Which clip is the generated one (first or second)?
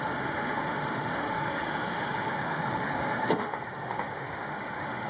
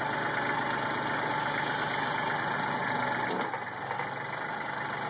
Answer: first